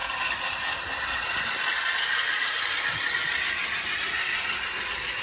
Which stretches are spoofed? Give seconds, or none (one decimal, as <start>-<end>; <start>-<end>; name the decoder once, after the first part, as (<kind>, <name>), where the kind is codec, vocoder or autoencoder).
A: 0.0-1.4 (vocoder, BigVGAN v2); 4.3-5.2